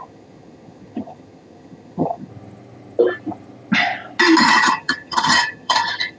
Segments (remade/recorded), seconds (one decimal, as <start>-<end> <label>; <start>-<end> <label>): 0.0-2.3 remade; 2.3-4.4 recorded; 4.4-6.2 remade